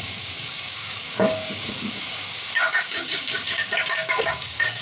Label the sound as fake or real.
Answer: fake